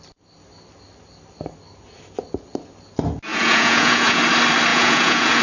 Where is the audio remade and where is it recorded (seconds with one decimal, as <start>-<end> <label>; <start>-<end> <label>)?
0.0-3.3 recorded; 3.3-4.2 remade; 4.2-4.7 recorded; 4.7-5.4 remade